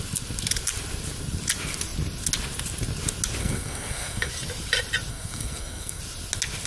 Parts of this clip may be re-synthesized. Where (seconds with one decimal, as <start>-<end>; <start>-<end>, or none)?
3.4-4.3; 5.1-6.0